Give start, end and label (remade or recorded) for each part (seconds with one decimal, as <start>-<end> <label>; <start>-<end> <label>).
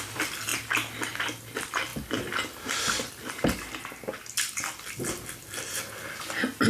0.0-6.7 recorded